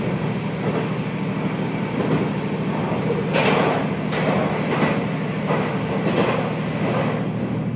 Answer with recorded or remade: recorded